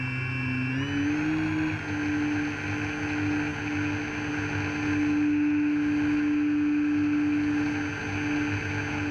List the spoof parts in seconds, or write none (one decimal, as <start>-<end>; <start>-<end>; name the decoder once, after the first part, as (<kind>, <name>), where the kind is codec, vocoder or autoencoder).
none